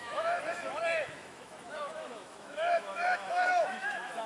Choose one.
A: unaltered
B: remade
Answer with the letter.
B